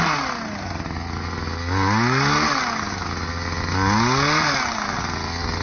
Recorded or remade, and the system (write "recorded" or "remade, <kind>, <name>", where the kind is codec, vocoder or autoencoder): recorded